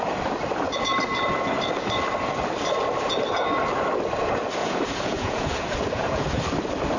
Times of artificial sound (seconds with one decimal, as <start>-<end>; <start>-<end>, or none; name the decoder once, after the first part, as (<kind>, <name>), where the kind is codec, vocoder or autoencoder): 4.6-6.4 (vocoder, Vocos)